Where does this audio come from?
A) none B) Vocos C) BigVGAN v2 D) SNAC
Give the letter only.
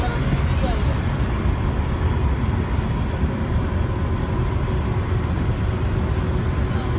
A